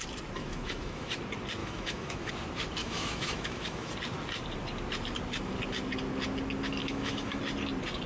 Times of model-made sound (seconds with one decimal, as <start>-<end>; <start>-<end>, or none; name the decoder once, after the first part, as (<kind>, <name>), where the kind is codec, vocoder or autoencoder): 0.4-1.2 (autoencoder, DAC-VAE); 1.6-2.3; 2.8-3.9; 6.8-7.4

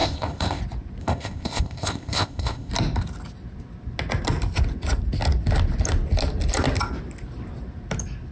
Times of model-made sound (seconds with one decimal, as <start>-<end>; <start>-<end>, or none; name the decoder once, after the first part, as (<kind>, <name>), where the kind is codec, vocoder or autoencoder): 0.0-0.6 (codec, ZipCodec); 1.0-2.7

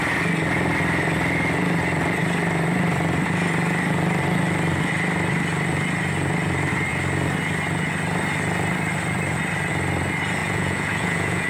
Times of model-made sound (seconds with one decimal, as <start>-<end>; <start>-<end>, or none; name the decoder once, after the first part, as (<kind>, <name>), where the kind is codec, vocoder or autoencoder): 10.4-11.5 (vocoder, Vocos)